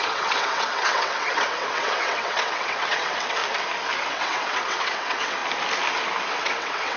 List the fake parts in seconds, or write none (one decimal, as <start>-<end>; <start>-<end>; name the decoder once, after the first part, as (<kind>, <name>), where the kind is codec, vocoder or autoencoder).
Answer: 0.0-3.4 (vocoder, WaveNeXt); 4.1-5.4; 6.3-7.0